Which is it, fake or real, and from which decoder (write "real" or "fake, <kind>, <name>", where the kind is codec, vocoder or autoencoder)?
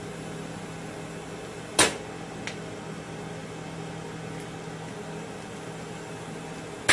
real